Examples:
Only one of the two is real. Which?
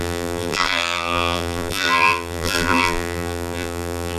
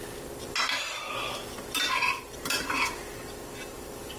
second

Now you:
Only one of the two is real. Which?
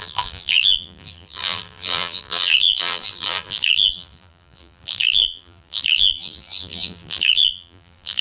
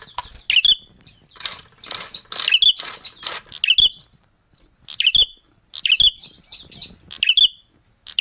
second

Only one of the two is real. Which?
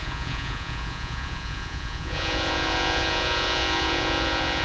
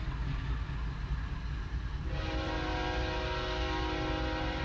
second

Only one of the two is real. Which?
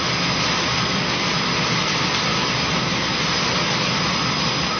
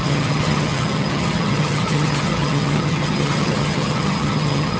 first